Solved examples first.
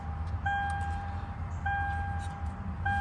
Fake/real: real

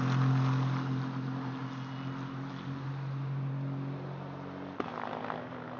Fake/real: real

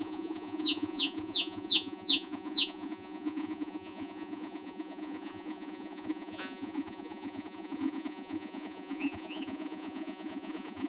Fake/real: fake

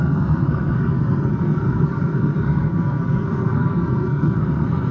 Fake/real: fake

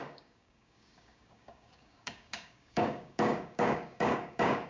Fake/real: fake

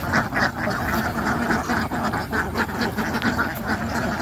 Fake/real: real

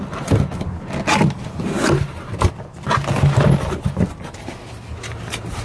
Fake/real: real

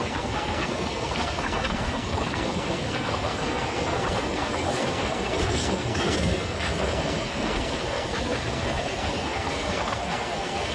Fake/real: fake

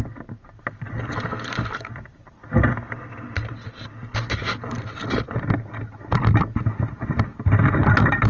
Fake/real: real